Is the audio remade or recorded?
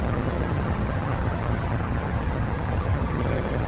remade